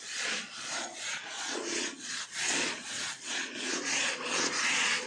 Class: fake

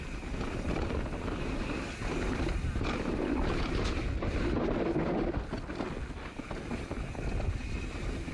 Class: real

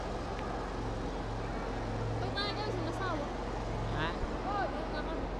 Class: real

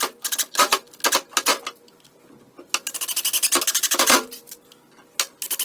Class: real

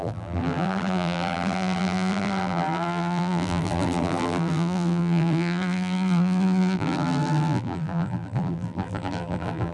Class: fake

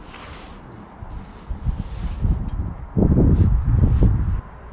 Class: real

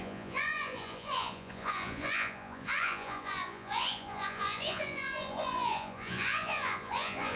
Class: fake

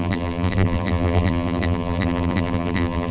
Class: fake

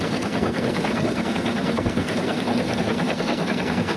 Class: fake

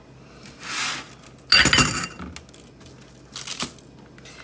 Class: real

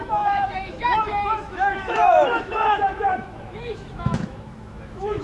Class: fake